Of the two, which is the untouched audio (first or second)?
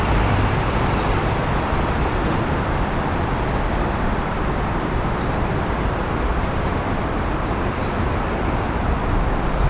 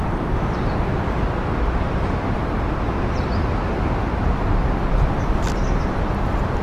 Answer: second